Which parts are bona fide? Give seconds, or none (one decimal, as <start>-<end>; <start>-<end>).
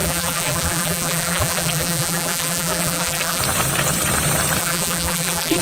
3.4-4.6